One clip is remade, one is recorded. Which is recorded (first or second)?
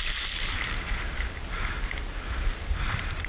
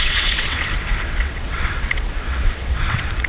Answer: first